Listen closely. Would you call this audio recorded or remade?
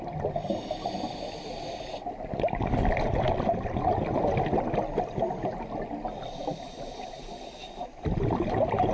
recorded